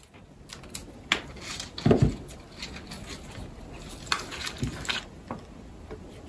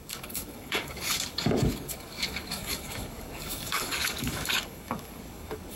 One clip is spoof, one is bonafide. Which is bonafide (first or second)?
first